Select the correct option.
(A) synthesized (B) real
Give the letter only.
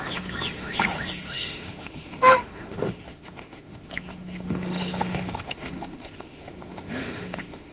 A